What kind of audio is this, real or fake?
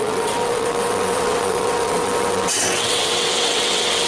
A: fake